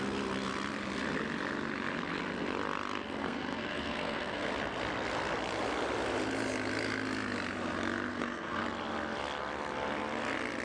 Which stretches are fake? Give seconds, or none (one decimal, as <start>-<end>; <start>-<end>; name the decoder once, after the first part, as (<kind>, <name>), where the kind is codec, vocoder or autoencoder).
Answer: 3.2-4.5 (codec, SNAC); 8.1-8.6